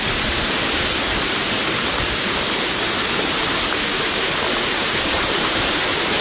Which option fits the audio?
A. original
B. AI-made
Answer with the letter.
B